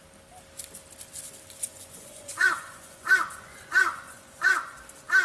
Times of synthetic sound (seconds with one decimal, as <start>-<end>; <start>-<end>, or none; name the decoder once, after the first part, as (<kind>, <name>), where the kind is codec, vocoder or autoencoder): 1.7-4.8 (vocoder, Vocos)